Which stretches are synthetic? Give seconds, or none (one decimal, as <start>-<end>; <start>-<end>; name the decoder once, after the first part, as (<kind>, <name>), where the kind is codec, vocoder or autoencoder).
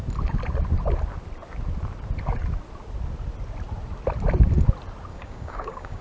5.1-6.0 (codec, DAC)